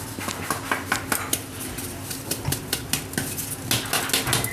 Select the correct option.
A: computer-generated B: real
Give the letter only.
B